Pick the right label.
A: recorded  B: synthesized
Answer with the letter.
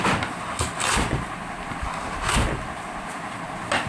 A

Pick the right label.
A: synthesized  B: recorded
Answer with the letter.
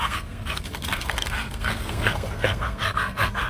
A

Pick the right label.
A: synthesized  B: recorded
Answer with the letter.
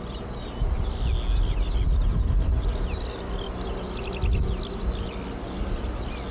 B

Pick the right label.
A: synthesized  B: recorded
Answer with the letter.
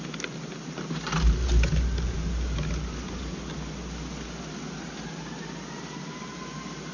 B